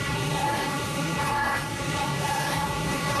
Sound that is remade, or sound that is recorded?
remade